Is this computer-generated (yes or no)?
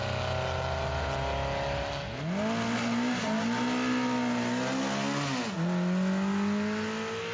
no